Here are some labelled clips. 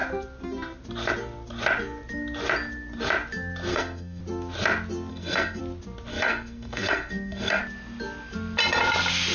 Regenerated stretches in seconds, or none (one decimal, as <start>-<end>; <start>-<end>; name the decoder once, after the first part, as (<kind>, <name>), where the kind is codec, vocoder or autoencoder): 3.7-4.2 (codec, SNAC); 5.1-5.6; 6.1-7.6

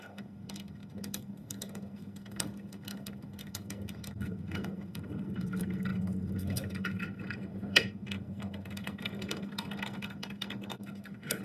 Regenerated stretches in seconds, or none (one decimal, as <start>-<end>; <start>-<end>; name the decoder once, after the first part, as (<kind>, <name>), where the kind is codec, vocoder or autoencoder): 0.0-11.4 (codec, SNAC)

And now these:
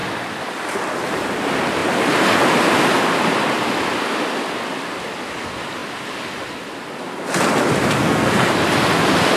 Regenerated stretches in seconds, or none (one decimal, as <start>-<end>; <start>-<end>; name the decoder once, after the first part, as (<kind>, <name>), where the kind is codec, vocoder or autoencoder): 8.0-8.5 (codec, SNAC)